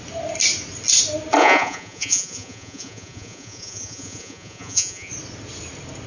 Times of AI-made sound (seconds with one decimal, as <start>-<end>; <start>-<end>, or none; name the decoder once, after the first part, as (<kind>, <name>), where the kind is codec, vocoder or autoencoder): 1.4-5.1 (vocoder, Vocos)